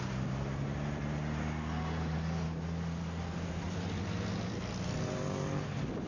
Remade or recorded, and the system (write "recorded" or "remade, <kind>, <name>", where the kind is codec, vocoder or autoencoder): recorded